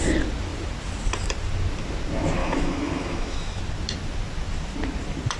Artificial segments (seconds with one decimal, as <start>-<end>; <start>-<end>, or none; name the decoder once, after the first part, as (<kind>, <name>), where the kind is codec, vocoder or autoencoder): 2.4-3.6 (autoencoder, DAC-VAE)